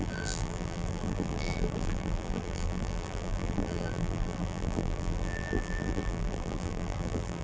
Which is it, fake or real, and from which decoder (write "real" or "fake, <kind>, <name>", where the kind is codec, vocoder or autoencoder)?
fake, vocoder, BigVGAN v2